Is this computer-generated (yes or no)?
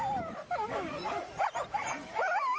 yes